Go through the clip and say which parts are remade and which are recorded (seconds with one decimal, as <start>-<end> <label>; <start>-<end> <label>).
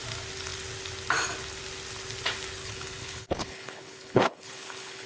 0.0-2.6 recorded; 2.6-5.1 remade